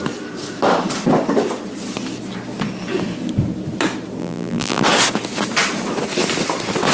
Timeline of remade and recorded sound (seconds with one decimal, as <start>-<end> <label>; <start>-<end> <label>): 0.0-4.2 recorded; 4.2-4.8 remade; 4.8-6.9 recorded

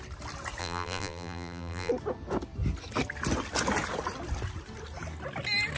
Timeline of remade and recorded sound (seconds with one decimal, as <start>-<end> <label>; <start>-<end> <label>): 0.0-0.6 recorded; 0.6-1.9 remade; 1.9-5.8 recorded

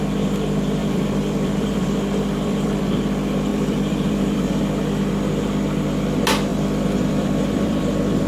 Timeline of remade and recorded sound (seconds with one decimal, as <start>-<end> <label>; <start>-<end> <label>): 0.0-0.8 recorded; 0.8-2.8 remade; 2.8-3.5 recorded; 3.5-4.6 remade; 4.6-6.5 recorded; 6.5-7.8 remade; 7.8-8.3 recorded

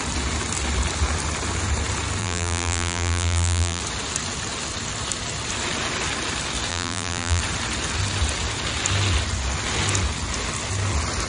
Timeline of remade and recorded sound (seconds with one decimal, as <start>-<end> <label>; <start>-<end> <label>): 0.0-2.2 recorded; 2.2-3.8 remade; 3.8-6.7 recorded; 6.7-7.4 remade; 7.4-11.3 recorded

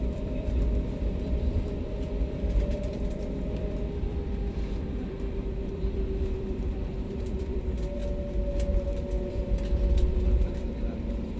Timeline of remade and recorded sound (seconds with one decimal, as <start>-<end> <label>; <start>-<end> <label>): 0.0-8.0 remade; 8.0-9.3 recorded; 9.3-11.4 remade